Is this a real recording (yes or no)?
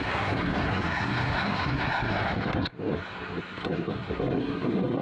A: no